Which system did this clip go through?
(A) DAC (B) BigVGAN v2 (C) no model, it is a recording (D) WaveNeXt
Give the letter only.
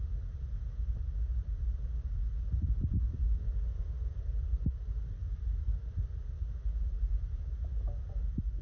C